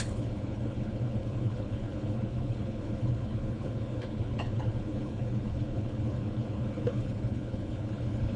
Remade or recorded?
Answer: remade